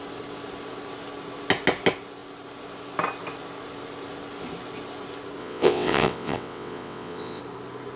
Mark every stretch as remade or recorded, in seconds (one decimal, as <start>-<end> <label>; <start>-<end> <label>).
0.0-5.4 recorded; 5.4-7.4 remade; 7.4-8.0 recorded